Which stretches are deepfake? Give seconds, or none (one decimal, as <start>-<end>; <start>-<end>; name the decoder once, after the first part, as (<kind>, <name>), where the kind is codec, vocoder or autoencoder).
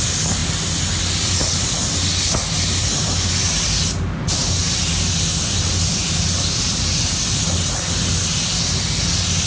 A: none